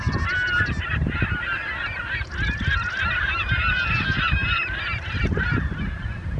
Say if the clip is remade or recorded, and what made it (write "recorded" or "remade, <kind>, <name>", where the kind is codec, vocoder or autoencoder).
remade, vocoder, BigVGAN v2